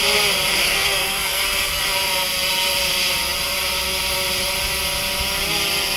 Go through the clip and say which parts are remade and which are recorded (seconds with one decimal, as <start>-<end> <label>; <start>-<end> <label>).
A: 0.0-0.6 recorded; 0.6-1.8 remade; 1.8-6.0 recorded